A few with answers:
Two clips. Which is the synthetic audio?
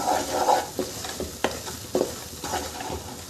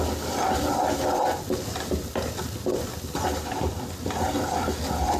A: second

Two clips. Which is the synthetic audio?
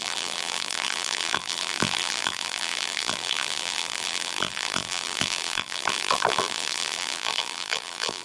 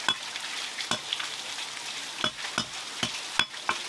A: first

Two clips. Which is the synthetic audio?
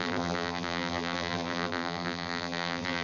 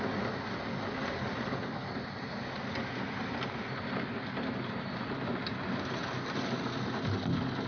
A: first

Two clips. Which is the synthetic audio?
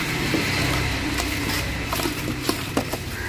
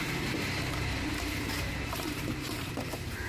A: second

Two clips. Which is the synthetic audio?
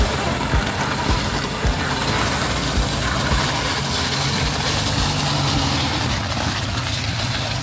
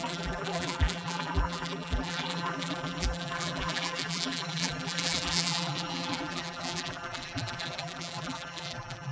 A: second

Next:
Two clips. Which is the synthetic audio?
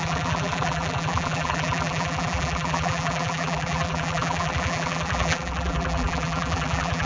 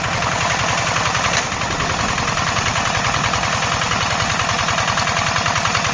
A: first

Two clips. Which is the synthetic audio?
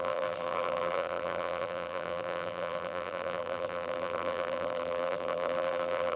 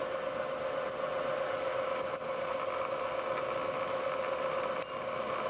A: first